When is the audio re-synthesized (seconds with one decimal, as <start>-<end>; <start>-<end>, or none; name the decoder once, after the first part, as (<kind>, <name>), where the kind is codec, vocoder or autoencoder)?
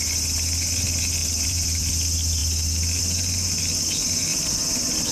1.2-1.9 (vocoder, BigVGAN v2); 4.3-5.1